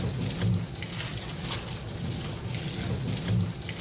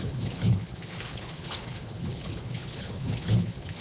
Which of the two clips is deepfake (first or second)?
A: second